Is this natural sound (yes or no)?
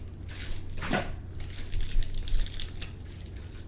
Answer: yes